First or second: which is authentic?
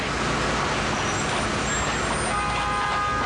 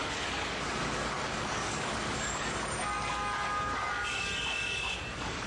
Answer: first